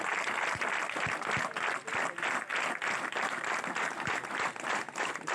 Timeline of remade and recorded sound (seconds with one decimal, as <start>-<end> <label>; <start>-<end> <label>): 0.0-5.3 recorded